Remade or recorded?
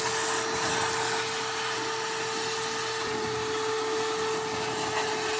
recorded